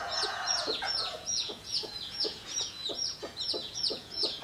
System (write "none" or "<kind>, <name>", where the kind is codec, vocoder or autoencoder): vocoder, Vocos